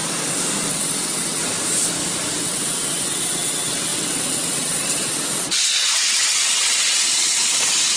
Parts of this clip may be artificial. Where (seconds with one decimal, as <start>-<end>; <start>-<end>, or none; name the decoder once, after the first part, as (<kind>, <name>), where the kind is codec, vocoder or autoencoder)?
0.7-1.4 (vocoder, WaveNeXt); 2.4-8.0